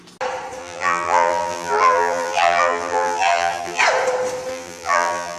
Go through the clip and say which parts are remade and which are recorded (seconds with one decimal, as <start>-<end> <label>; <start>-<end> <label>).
0.0-0.6 recorded; 0.6-3.8 remade; 3.8-4.5 recorded; 4.5-5.4 remade